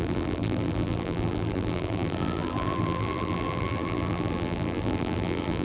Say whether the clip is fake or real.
fake